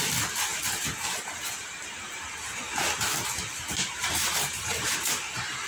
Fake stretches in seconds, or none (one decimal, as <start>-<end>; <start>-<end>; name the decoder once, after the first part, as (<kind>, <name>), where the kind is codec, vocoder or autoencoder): 0.5-2.2 (vocoder, BigVGAN v2); 3.5-5.7